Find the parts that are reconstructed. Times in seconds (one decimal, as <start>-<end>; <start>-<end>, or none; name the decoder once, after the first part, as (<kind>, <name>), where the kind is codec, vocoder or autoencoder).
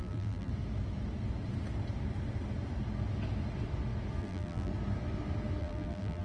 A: 0.0-0.5 (vocoder, BigVGAN v2); 4.2-4.7; 5.6-6.2